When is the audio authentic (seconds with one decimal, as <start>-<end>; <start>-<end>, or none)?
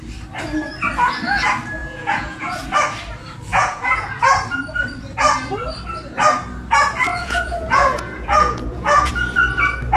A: 0.0-1.8; 2.6-3.5; 4.1-7.1; 9.1-10.0